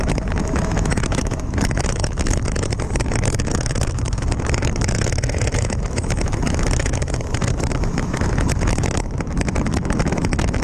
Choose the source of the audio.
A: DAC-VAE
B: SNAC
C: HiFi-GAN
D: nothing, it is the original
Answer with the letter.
A